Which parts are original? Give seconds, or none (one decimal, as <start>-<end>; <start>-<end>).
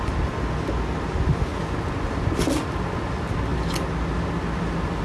0.0-5.0